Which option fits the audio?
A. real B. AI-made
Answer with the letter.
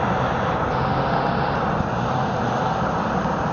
A